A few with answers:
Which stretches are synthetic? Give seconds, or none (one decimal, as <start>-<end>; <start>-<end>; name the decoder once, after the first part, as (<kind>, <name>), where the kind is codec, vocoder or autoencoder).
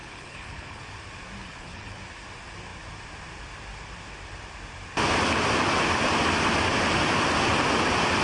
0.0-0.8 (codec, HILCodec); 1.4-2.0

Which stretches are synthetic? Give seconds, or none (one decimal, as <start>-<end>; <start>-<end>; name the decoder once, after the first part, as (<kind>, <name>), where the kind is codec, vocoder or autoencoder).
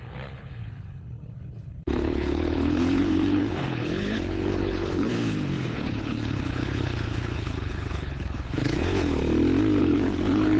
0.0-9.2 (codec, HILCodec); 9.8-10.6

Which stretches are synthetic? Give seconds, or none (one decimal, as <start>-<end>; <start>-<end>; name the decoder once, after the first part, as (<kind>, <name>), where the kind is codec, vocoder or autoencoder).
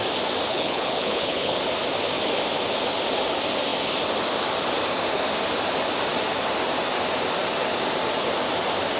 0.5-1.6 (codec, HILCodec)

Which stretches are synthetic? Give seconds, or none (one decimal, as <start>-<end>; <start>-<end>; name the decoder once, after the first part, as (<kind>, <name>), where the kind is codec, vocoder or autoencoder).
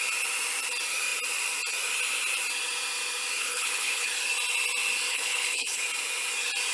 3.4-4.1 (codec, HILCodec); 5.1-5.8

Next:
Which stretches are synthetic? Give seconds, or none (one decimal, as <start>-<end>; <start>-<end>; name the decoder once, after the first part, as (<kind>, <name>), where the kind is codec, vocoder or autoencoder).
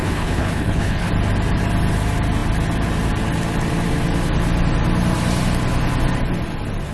0.0-1.1 (codec, HILCodec)